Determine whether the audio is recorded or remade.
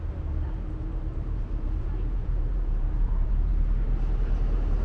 remade